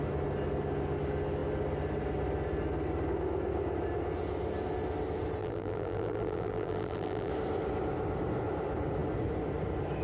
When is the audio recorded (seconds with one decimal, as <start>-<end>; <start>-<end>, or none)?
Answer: 0.0-5.4; 7.3-10.0